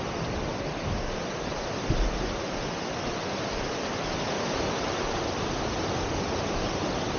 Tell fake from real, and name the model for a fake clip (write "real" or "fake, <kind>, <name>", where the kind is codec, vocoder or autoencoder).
real